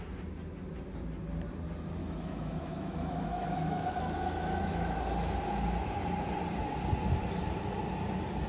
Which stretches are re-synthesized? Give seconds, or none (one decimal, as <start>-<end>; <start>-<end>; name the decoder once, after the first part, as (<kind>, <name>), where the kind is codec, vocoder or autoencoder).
2.0-5.0 (autoencoder, DAC-VAE)